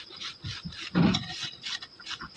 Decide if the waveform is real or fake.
real